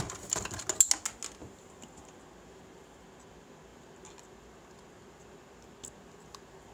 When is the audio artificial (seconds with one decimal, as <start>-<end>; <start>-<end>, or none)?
1.4-2.0

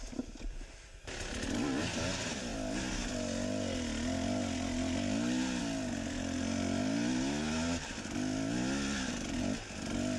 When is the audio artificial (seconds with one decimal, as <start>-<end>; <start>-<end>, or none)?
none

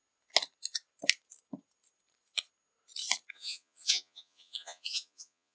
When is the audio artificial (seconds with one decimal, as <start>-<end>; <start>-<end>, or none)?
3.3-5.5

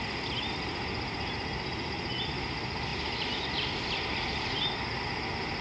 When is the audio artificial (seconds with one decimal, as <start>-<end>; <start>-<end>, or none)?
none